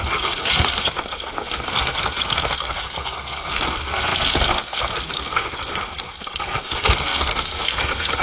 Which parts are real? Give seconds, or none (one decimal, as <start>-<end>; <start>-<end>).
none